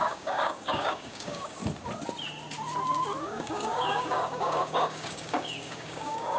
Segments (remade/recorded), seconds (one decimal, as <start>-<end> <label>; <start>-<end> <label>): 0.0-1.6 remade; 1.6-3.2 recorded; 3.2-6.4 remade